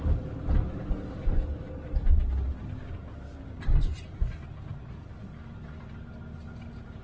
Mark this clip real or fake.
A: real